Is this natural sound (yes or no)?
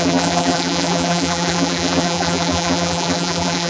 no